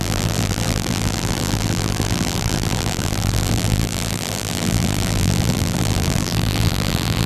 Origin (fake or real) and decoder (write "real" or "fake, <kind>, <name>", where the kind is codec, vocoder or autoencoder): fake, vocoder, BigVGAN v2